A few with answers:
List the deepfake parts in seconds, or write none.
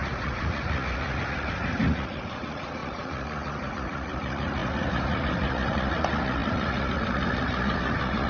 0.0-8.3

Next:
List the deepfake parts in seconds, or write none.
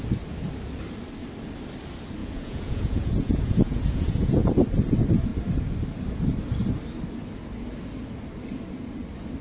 2.2-4.5